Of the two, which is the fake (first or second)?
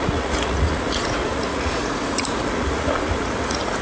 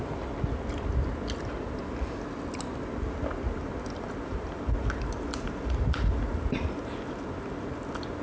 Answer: first